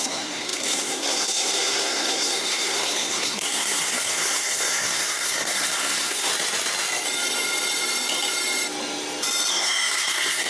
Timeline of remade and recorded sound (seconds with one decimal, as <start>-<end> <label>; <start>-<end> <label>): 0.0-6.3 remade; 6.3-9.5 recorded; 9.5-10.5 remade

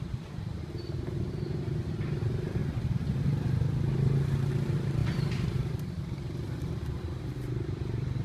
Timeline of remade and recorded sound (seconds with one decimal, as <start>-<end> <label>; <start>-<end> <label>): 0.0-2.6 remade; 2.6-4.5 recorded; 4.5-8.2 remade